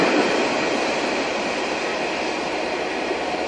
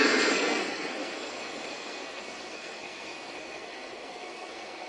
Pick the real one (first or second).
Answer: first